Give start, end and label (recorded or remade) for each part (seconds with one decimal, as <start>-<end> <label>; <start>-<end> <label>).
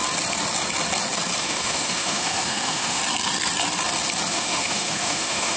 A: 0.0-1.4 recorded; 1.4-3.0 remade; 3.0-4.3 recorded; 4.3-5.6 remade